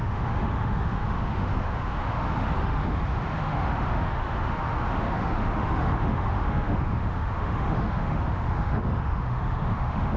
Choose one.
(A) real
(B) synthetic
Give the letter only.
B